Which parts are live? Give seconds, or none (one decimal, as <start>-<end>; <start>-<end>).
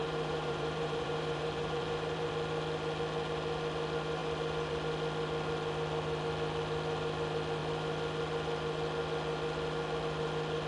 2.3-10.7